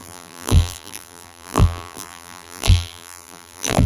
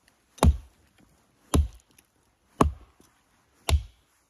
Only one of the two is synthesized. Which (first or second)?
first